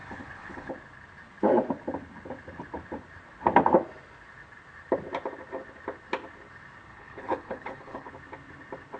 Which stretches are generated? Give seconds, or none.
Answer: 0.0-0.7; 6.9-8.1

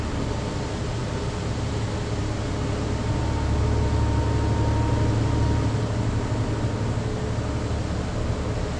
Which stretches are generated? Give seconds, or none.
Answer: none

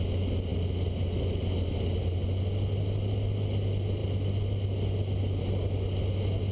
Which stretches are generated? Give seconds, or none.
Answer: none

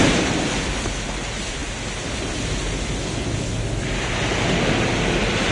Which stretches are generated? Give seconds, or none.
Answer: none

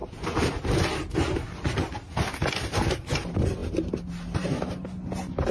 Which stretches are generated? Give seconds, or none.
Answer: none

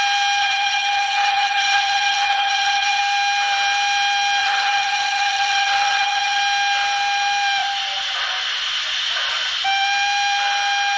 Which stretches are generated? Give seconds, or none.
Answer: 0.4-3.0; 4.4-6.4

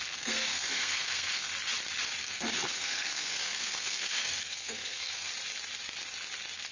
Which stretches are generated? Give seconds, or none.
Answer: 0.0-1.5; 2.2-5.3